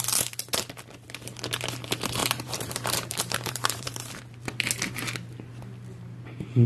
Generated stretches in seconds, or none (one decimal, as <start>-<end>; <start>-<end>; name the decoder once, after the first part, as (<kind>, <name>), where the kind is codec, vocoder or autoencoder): 2.2-4.1 (vocoder, BigVGAN v2)